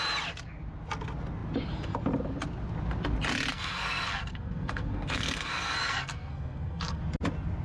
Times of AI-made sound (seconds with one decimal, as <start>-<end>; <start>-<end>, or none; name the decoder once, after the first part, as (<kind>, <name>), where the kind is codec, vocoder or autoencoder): 3.5-7.0 (codec, SNAC)